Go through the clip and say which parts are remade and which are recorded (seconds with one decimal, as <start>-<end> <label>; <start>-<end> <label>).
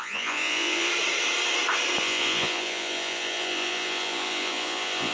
0.0-0.9 remade; 0.9-2.0 recorded; 2.0-5.1 remade